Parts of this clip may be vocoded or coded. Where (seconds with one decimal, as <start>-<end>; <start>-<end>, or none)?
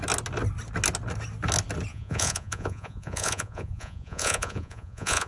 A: 1.9-5.3